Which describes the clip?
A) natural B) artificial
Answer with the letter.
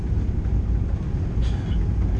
A